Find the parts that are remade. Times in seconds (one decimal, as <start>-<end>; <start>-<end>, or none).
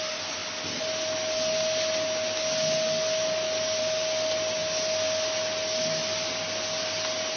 none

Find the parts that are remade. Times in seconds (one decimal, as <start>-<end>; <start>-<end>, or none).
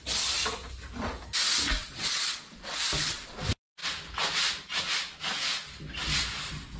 1.8-2.5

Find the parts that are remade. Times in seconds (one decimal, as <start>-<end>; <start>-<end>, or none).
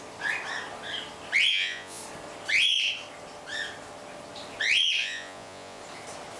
1.5-2.0; 5.0-5.8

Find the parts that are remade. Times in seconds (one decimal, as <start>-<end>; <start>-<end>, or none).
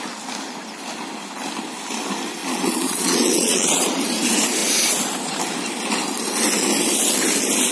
2.4-4.0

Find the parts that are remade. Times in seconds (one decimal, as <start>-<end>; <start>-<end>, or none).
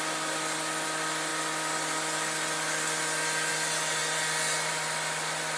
none